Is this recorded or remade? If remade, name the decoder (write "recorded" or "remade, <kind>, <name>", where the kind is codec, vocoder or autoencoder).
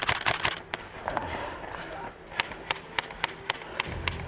recorded